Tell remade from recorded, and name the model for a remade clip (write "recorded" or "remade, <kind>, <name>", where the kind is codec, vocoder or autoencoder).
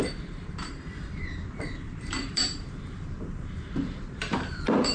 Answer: remade, vocoder, BigVGAN v2